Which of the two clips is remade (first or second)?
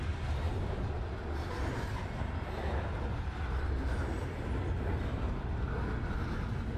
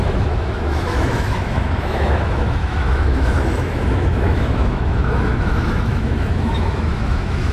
second